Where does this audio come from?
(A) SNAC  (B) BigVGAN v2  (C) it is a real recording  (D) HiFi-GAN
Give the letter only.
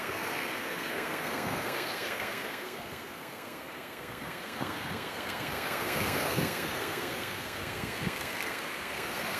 A